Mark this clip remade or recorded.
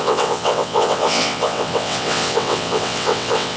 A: remade